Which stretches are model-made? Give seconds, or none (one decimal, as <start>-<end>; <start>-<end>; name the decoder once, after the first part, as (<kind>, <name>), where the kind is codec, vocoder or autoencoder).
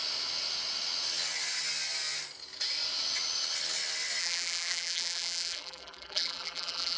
4.2-7.0 (vocoder, BigVGAN v2)